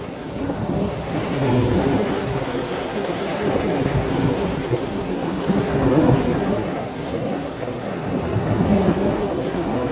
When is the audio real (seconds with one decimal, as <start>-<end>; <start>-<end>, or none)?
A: none